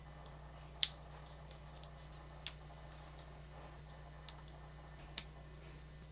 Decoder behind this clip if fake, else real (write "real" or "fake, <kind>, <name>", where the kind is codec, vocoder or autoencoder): real